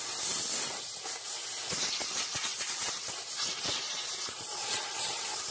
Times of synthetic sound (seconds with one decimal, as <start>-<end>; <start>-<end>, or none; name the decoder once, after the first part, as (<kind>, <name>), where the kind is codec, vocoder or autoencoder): 2.5-4.0 (vocoder, BigVGAN v2)